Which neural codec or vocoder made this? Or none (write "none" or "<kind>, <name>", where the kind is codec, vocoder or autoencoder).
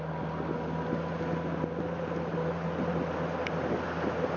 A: none